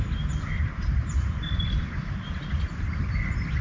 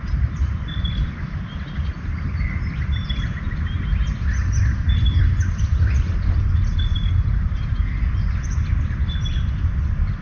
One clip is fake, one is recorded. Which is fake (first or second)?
first